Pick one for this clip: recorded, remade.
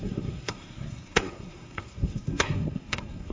remade